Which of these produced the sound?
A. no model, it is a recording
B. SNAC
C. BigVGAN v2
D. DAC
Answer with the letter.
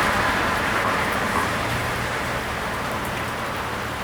C